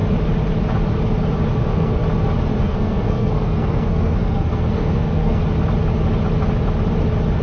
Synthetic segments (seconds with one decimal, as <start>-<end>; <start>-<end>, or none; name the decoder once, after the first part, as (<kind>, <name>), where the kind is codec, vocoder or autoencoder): 1.6-2.0 (codec, SNAC); 2.6-5.4